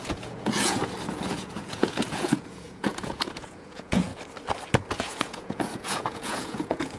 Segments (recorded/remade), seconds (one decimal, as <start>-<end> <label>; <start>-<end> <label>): 0.0-0.8 remade; 0.8-1.3 recorded; 1.3-4.1 remade; 4.1-4.9 recorded; 4.9-7.0 remade